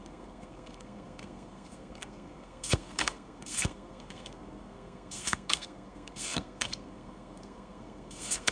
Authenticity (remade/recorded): remade